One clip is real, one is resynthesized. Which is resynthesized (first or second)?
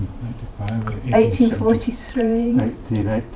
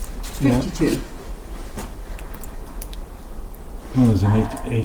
first